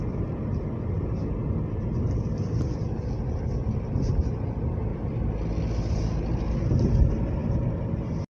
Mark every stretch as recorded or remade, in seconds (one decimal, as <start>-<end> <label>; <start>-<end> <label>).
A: 0.0-1.2 remade; 1.2-2.0 recorded; 2.0-4.9 remade; 4.9-6.5 recorded; 6.5-8.4 remade